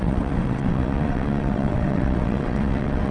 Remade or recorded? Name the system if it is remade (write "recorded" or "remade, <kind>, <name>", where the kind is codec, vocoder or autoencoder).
remade, vocoder, WaveNeXt